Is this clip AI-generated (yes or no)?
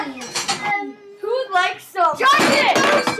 no